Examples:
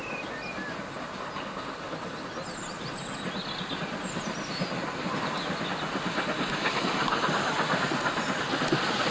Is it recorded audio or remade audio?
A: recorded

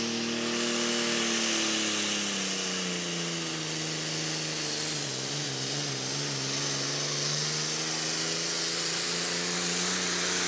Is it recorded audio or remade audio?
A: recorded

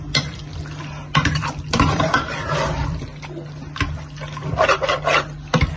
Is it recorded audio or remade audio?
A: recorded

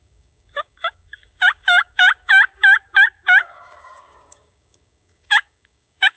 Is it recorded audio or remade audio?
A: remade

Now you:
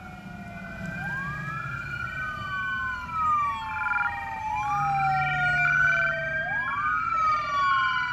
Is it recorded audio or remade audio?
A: recorded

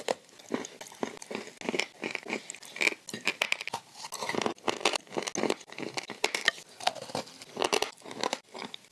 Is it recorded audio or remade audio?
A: recorded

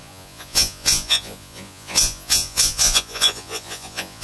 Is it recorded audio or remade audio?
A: remade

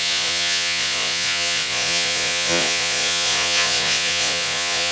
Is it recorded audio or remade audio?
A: remade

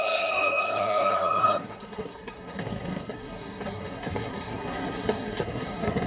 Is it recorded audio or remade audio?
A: remade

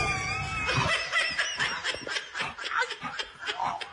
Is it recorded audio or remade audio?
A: recorded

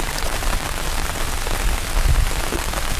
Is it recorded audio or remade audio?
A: recorded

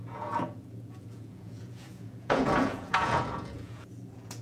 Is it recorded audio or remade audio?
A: remade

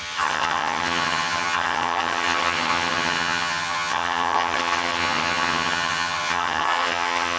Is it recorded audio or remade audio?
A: remade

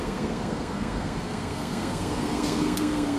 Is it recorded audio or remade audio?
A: remade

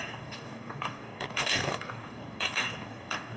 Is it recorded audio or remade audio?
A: remade